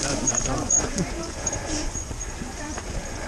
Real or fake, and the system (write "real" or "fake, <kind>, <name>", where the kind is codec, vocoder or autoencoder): fake, vocoder, Vocos